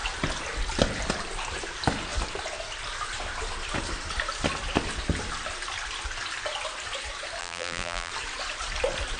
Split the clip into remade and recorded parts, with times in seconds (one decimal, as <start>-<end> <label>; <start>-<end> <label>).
0.0-7.4 recorded; 7.4-8.1 remade; 8.1-9.2 recorded